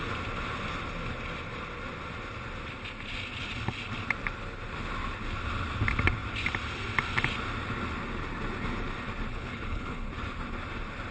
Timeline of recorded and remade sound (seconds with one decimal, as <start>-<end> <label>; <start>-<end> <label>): 0.0-9.3 recorded; 9.3-10.1 remade; 10.1-11.1 recorded